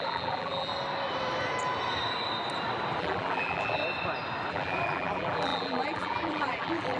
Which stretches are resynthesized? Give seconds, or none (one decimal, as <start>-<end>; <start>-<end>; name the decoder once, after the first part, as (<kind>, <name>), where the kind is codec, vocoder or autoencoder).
0.0-0.7 (vocoder, BigVGAN v2); 3.0-3.8; 4.5-7.0

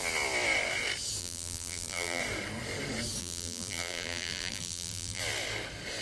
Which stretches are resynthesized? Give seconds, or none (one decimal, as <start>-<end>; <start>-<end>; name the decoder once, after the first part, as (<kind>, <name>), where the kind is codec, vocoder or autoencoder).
1.2-2.2 (vocoder, BigVGAN v2); 3.2-5.2

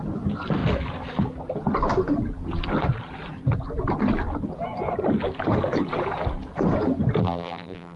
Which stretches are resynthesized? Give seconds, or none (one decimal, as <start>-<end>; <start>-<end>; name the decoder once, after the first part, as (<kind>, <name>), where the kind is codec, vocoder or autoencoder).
7.2-8.0 (vocoder, BigVGAN v2)

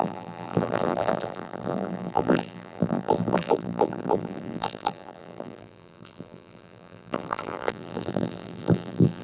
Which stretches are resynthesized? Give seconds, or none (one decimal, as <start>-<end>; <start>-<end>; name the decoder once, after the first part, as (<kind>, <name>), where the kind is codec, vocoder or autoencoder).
0.0-9.2 (vocoder, BigVGAN v2)